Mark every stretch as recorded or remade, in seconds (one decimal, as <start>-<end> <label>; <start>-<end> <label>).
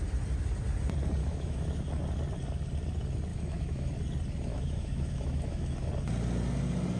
0.0-1.2 recorded; 1.2-1.9 remade; 1.9-3.3 recorded; 3.3-3.9 remade; 3.9-4.5 recorded; 4.5-5.9 remade; 5.9-7.0 recorded